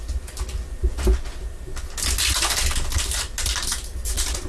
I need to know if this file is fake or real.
real